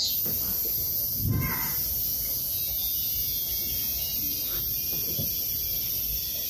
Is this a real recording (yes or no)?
yes